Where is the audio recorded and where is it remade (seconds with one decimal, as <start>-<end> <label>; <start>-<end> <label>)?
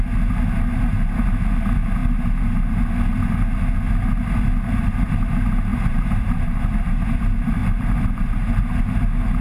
0.0-5.7 recorded; 5.7-6.6 remade; 6.6-7.6 recorded; 7.6-8.8 remade; 8.8-9.4 recorded